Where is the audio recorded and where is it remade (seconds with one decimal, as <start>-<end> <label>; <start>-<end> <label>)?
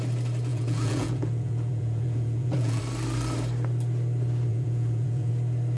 0.0-0.5 recorded; 0.5-2.8 remade; 2.8-4.5 recorded; 4.5-5.3 remade; 5.3-5.8 recorded